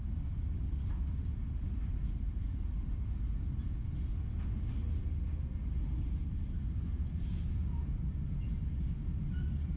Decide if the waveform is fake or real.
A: real